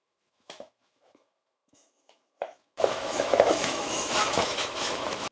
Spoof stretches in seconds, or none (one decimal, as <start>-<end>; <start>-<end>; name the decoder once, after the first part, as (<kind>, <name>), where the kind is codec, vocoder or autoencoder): 0.0-5.3 (autoencoder, DAC-VAE)